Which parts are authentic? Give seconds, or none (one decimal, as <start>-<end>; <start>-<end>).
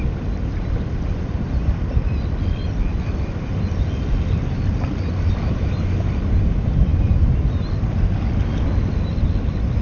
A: 0.0-9.8